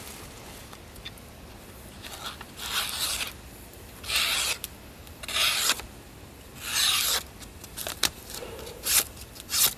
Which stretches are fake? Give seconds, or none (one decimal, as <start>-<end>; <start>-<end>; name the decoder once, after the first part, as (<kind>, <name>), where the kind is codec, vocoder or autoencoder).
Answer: 7.8-9.3 (vocoder, BigVGAN v2)